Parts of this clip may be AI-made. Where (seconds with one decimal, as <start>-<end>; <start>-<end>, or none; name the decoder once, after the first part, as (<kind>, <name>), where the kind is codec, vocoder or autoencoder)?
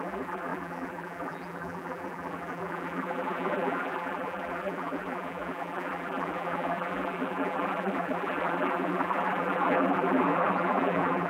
0.0-11.3 (vocoder, BigVGAN v2)